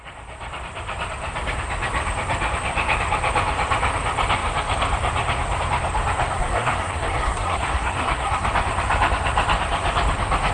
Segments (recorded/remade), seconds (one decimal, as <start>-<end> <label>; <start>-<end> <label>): 0.0-6.4 recorded; 6.4-8.5 remade; 8.5-10.5 recorded